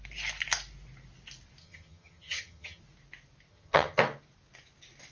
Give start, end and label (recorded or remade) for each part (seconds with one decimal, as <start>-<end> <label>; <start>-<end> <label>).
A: 0.0-1.6 recorded; 1.6-2.8 remade; 2.8-3.5 recorded; 3.5-4.0 remade; 4.0-5.1 recorded